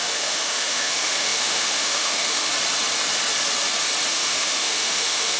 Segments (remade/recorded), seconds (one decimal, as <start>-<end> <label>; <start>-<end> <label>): 0.0-2.5 remade; 2.5-4.1 recorded; 4.1-5.4 remade